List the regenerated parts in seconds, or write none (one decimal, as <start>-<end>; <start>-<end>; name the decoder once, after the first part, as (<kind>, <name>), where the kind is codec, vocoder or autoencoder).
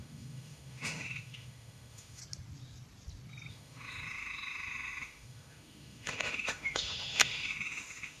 0.0-2.2 (autoencoder, DAC-VAE); 3.5-8.2